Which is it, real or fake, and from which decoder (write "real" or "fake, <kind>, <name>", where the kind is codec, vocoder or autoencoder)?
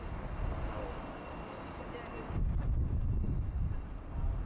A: real